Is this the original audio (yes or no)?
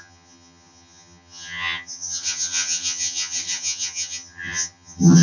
no